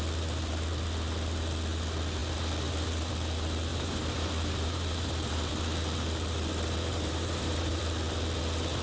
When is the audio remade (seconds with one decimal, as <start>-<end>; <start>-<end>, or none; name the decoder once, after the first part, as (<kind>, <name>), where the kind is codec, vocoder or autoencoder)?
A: 3.7-5.5 (vocoder, BigVGAN v2); 6.9-7.8